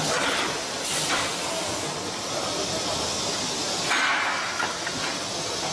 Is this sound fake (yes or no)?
no